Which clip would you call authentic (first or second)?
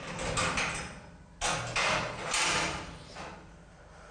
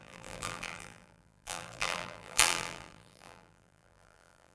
first